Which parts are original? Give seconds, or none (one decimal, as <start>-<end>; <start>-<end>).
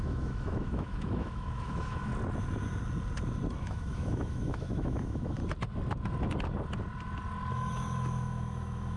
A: 2.1-3.6; 5.4-7.5